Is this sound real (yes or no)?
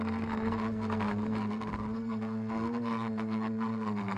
no